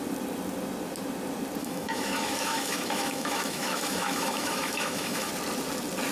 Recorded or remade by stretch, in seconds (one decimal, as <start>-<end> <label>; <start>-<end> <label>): 0.0-1.6 recorded; 1.6-5.3 remade; 5.3-6.1 recorded